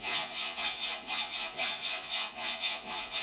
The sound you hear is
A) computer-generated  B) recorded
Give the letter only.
A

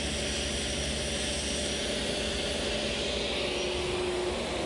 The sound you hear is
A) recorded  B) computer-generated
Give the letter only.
A